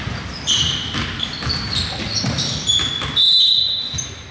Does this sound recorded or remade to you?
recorded